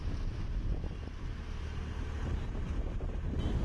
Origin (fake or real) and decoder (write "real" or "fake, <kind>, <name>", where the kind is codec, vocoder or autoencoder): real